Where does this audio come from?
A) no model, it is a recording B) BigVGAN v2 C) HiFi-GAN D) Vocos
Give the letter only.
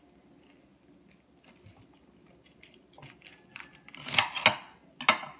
A